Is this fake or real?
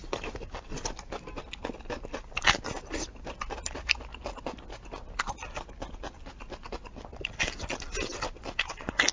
real